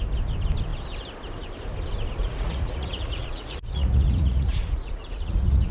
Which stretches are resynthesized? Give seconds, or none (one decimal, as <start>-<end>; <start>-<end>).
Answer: 2.2-5.7